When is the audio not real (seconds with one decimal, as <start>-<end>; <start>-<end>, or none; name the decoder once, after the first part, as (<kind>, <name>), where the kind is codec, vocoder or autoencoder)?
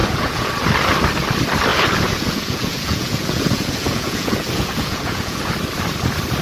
0.0-0.5 (vocoder, Vocos); 1.7-5.5